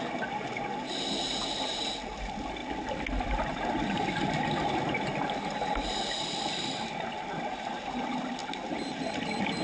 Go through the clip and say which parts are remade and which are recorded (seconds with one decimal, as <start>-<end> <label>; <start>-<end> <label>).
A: 0.0-9.6 recorded